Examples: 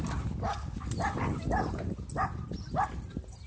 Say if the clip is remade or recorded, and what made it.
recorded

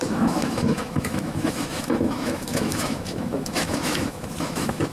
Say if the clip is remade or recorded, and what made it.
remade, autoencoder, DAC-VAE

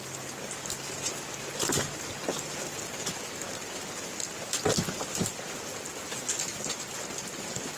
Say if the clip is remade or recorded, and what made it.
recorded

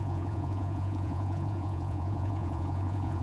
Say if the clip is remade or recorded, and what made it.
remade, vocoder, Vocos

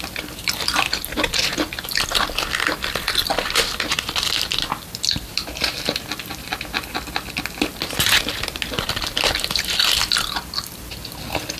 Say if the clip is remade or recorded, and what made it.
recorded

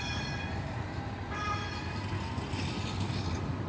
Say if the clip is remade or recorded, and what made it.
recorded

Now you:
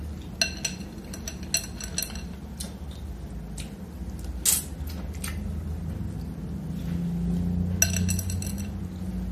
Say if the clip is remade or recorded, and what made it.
recorded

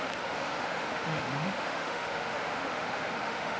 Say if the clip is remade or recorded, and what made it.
remade, autoencoder, DAC-VAE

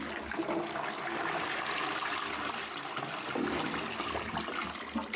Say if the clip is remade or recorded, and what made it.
recorded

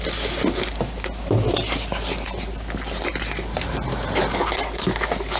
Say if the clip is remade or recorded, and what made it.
recorded